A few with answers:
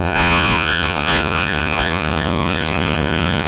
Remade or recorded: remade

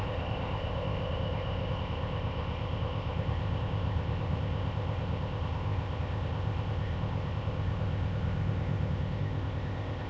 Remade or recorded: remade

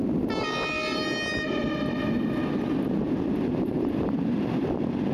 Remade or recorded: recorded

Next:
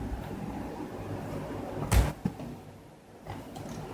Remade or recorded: recorded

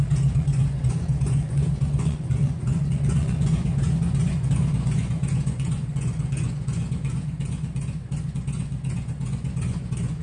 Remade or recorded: remade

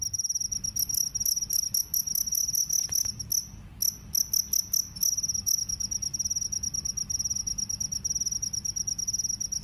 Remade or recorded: recorded